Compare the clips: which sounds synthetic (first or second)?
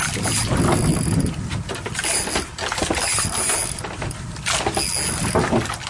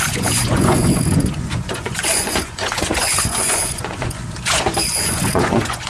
second